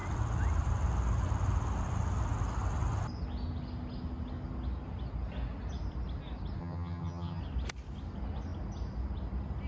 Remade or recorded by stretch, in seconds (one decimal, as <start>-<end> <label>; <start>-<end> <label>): 0.0-6.6 recorded; 6.6-7.4 remade; 7.4-9.7 recorded